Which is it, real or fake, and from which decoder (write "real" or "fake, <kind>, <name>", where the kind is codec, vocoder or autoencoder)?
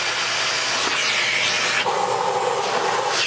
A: real